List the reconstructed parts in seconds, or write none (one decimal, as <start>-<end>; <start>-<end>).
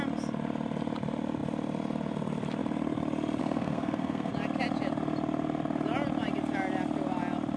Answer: 3.4-4.3